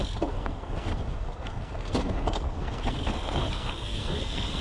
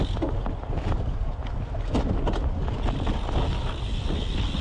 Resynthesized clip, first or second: first